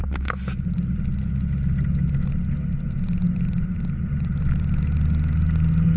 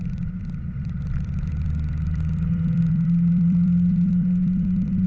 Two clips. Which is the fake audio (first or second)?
second